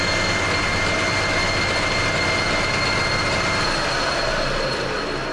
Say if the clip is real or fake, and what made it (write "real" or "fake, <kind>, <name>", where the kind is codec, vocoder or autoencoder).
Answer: real